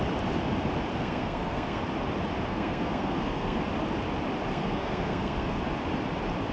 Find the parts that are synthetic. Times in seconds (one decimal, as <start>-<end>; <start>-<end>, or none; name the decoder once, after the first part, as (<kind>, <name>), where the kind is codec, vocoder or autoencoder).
0.9-1.8 (codec, SNAC); 2.5-3.6; 4.5-5.6